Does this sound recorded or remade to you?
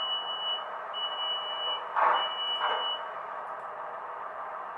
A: recorded